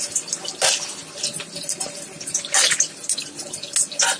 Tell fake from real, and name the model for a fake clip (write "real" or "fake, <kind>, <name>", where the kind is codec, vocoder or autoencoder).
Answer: real